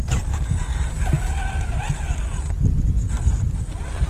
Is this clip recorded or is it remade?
recorded